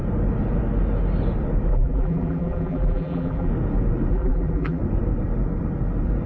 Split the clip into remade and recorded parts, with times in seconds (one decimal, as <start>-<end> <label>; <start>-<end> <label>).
0.0-1.7 recorded; 1.7-3.5 remade; 3.5-4.1 recorded; 4.1-4.8 remade; 4.8-6.3 recorded